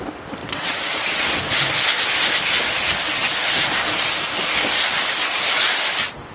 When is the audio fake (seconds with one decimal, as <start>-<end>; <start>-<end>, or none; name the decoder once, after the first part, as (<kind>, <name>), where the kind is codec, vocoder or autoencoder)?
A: 0.4-1.2 (vocoder, WaveNeXt)